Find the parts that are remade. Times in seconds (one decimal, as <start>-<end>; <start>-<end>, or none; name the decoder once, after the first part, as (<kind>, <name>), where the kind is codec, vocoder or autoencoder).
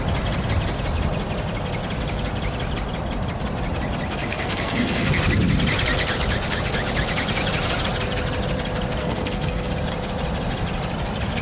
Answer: 4.2-5.2 (codec, SNAC); 9.0-9.7